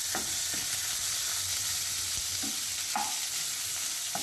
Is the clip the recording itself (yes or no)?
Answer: yes